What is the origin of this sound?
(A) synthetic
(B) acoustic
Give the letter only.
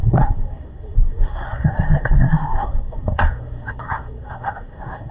A